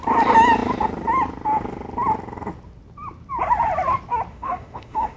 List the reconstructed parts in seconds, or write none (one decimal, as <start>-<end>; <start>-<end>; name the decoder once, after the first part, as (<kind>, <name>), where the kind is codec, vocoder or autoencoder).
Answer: 4.3-5.2 (autoencoder, DAC-VAE)